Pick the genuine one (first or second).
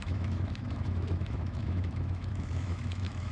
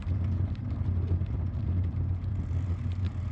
second